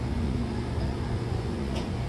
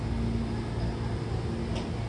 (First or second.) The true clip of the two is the second